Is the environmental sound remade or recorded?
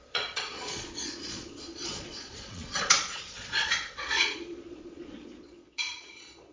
remade